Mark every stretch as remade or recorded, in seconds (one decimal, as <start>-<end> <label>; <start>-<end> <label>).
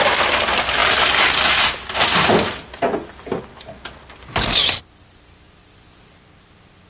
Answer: 0.0-6.9 recorded